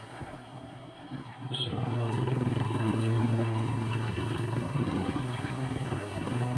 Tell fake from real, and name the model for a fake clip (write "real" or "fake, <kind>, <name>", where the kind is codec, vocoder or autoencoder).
fake, codec, SNAC